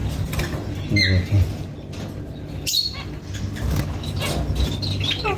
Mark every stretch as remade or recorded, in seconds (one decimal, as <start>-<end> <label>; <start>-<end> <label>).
0.0-5.4 recorded